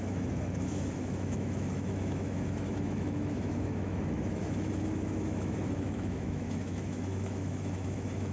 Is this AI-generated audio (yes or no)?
yes